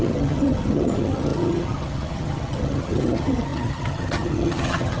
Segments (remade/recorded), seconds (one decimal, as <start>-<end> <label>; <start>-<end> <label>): 0.0-5.0 remade